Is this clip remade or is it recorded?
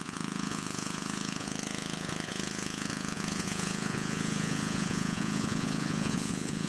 remade